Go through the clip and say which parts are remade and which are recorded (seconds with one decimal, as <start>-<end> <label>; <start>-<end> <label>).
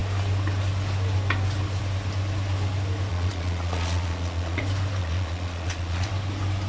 0.0-3.1 recorded; 3.1-4.6 remade; 4.6-5.0 recorded; 5.0-6.1 remade; 6.1-6.7 recorded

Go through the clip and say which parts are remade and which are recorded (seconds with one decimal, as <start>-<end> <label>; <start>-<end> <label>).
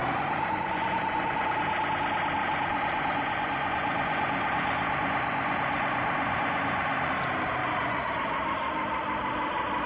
0.0-1.5 remade; 1.5-2.4 recorded; 2.4-7.1 remade; 7.1-7.6 recorded; 7.6-8.1 remade; 8.1-9.9 recorded